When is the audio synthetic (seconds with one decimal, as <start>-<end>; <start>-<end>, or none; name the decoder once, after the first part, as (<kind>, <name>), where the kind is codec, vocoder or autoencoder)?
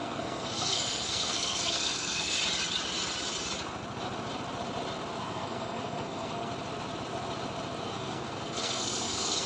0.0-2.4 (codec, SNAC); 5.2-6.5; 7.8-9.5